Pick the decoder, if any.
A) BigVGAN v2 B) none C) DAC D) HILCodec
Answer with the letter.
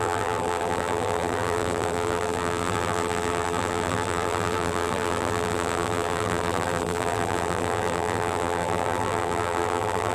A